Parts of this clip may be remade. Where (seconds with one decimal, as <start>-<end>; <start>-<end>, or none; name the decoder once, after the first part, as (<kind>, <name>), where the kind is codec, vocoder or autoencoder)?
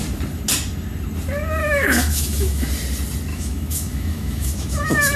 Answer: 1.6-2.7 (autoencoder, DAC-VAE); 3.3-5.2